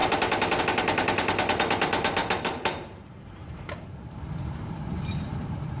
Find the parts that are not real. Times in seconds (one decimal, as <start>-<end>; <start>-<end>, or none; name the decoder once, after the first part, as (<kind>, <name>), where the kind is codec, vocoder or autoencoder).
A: 2.2-5.8 (vocoder, BigVGAN v2)